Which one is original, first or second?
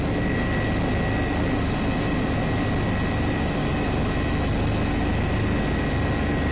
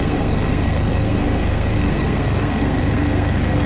first